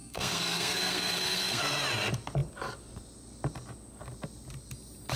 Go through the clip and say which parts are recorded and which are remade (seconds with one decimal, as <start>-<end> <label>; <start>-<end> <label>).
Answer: 0.0-1.6 remade; 1.6-5.2 recorded